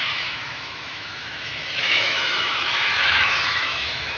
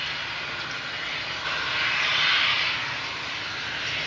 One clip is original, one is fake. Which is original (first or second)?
second